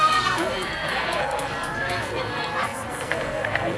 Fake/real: fake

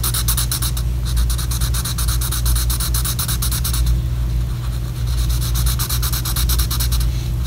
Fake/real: real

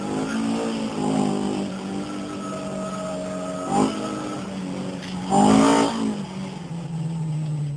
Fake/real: real